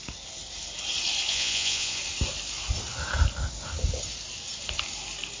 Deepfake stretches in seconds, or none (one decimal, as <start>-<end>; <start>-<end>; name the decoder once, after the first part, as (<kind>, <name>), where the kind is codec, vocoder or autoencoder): 1.3-2.0 (vocoder, Vocos)